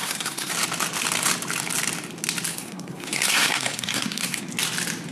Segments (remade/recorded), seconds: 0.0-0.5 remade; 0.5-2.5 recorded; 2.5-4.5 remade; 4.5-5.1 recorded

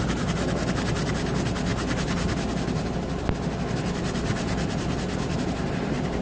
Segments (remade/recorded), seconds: 0.0-6.2 recorded

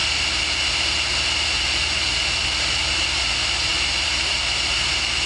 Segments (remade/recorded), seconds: 0.0-5.3 recorded

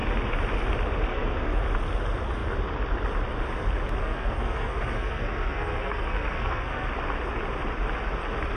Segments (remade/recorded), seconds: 0.0-1.1 recorded; 1.1-1.6 remade; 1.6-4.0 recorded; 4.0-6.9 remade; 6.9-8.6 recorded